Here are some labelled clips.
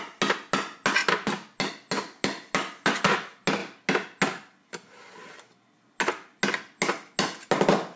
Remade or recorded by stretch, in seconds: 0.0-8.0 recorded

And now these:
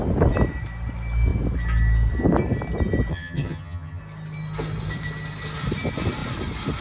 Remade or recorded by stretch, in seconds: 0.0-3.1 recorded; 3.1-4.0 remade; 4.0-6.8 recorded

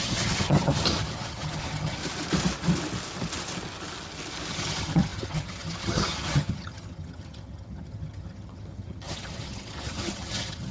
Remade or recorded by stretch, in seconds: 0.0-2.0 remade; 2.0-4.5 recorded; 4.5-10.7 remade

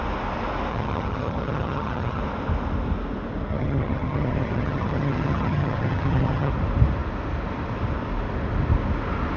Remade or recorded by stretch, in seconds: 0.0-0.7 recorded; 0.7-2.2 remade; 2.2-3.5 recorded; 3.5-6.5 remade; 6.5-9.4 recorded

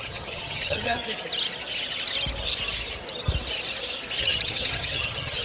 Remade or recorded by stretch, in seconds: 0.0-1.0 remade; 1.0-4.2 recorded; 4.2-5.4 remade

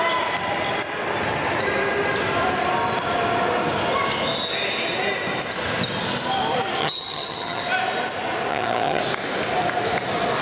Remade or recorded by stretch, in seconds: 0.0-6.8 recorded; 6.8-7.6 remade; 7.6-8.5 recorded; 8.5-9.0 remade; 9.0-10.4 recorded

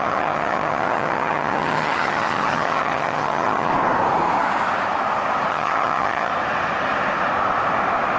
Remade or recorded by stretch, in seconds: 0.0-3.7 remade; 3.7-5.5 recorded; 5.5-6.3 remade; 6.3-8.2 recorded

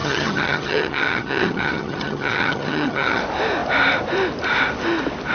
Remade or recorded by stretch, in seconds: 0.0-3.2 remade; 3.2-5.3 recorded